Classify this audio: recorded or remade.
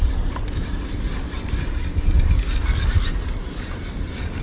recorded